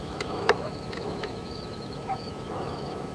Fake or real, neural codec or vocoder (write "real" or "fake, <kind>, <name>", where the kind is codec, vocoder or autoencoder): fake, autoencoder, DAC-VAE